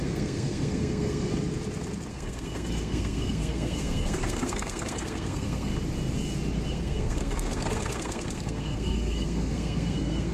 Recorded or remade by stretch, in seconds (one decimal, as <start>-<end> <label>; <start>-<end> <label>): 0.0-1.3 remade; 1.3-2.1 recorded; 2.1-5.7 remade; 5.7-6.7 recorded; 6.7-10.3 remade